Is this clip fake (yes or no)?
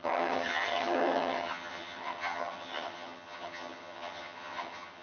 yes